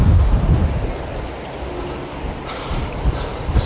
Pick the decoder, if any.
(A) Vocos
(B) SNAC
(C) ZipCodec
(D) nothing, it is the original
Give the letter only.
D